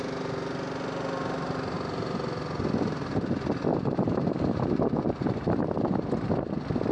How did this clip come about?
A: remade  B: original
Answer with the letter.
B